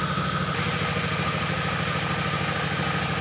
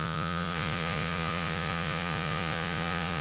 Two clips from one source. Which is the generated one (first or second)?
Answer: second